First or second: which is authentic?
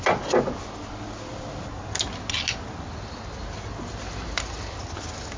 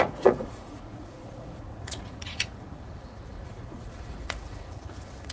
first